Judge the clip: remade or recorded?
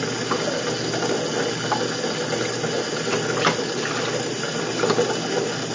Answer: recorded